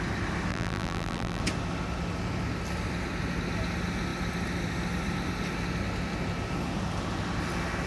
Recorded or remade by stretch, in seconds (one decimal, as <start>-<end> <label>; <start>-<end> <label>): 0.0-0.5 recorded; 0.5-1.4 remade; 1.4-7.9 recorded